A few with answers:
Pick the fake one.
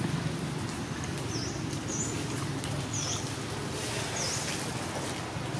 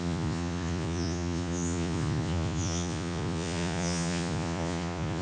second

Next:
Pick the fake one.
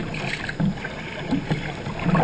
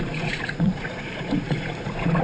second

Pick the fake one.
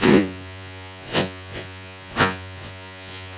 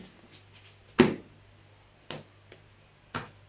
first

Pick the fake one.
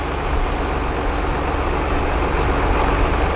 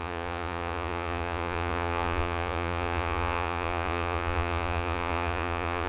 second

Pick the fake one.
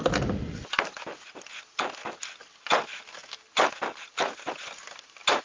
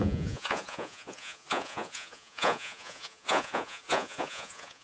second